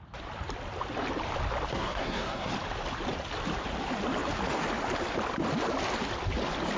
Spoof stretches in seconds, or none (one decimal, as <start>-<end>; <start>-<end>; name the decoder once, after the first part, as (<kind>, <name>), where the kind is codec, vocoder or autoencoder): 1.7-2.5 (codec, SNAC)